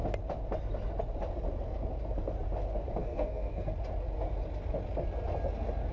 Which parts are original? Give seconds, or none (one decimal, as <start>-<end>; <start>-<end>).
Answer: 0.0-3.0; 3.7-5.9